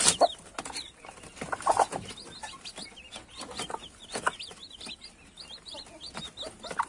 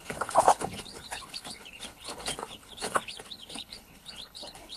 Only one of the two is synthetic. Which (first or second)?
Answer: second